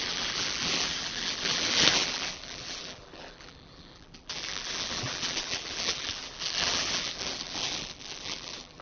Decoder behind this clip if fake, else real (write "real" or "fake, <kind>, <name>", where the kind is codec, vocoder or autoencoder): fake, vocoder, BigVGAN v2